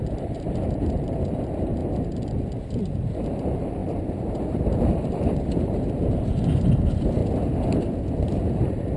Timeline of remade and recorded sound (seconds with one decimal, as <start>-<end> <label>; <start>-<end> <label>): 0.0-1.8 remade; 1.8-2.9 recorded; 2.9-7.2 remade; 7.2-8.1 recorded; 8.1-9.0 remade